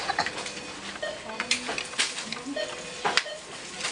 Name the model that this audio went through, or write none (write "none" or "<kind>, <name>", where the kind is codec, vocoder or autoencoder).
none